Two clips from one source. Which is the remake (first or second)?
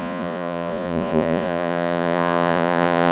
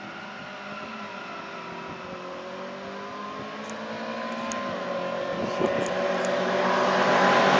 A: first